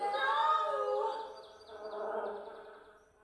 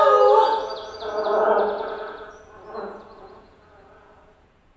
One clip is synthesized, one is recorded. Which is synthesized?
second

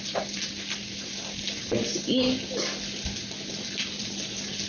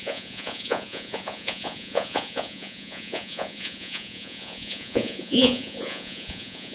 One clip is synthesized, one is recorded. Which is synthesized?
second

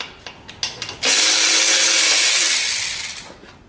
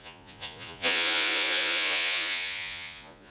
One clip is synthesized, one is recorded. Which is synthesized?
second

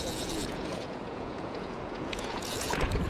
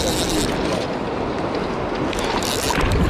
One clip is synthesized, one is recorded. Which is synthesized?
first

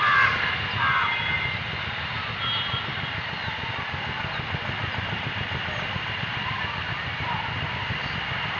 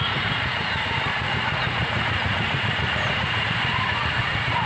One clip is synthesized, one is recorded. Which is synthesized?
second